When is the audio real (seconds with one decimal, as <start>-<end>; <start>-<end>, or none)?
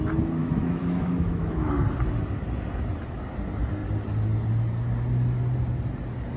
0.0-0.4; 1.7-6.4